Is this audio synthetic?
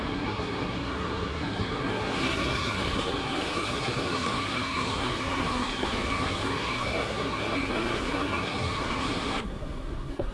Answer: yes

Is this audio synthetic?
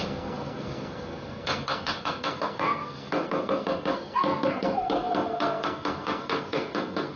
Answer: yes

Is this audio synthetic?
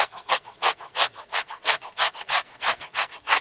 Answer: yes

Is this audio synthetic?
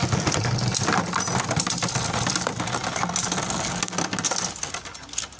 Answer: no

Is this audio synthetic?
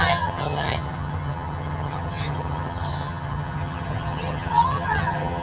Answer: yes